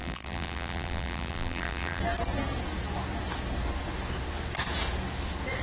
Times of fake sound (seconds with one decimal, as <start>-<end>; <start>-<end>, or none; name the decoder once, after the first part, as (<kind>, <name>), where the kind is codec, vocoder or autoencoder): 0.0-2.0 (vocoder, BigVGAN v2)